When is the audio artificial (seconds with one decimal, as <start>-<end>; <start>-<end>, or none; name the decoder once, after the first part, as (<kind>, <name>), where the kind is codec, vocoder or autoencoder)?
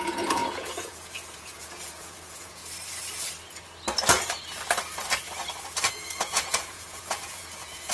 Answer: 0.0-2.6 (vocoder, Vocos); 5.9-7.9